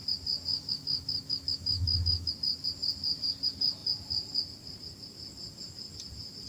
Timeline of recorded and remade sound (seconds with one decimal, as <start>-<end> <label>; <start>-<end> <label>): 0.0-0.5 recorded; 0.5-2.3 remade; 2.3-6.5 recorded